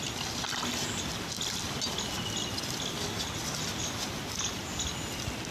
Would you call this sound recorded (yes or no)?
yes